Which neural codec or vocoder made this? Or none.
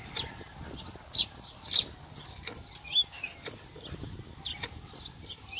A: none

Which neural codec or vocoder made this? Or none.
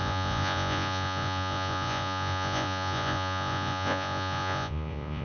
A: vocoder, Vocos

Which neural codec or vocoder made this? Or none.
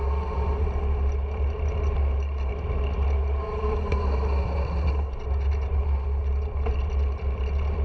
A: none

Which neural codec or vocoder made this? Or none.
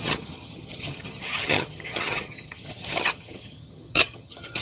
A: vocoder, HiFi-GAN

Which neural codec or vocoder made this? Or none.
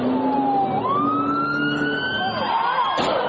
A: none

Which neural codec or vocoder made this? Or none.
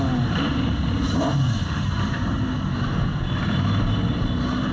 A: none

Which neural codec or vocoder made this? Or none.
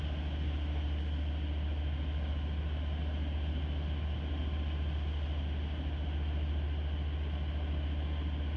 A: none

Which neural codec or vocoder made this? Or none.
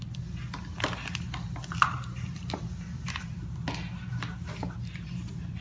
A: none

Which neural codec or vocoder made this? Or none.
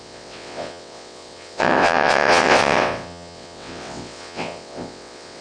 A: vocoder, WaveNeXt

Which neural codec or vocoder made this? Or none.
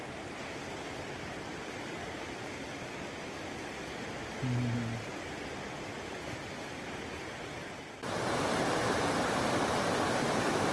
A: none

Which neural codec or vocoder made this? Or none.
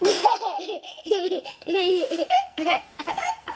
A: codec, SNAC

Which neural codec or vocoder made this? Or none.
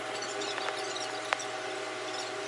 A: none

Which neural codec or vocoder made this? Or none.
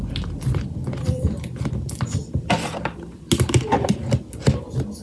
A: none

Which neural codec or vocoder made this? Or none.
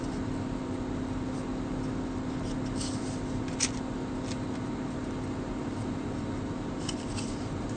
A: none